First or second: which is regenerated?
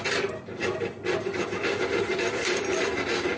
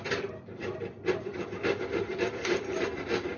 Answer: second